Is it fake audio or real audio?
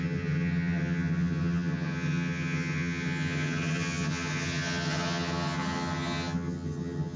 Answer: fake